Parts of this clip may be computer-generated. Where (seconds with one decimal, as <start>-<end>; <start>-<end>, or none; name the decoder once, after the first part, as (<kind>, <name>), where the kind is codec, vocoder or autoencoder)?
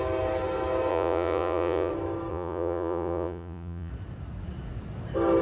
0.9-1.9 (vocoder, Vocos); 2.3-3.9